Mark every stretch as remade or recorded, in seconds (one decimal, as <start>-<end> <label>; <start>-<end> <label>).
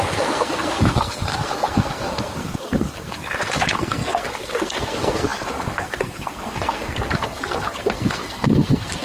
0.0-9.0 remade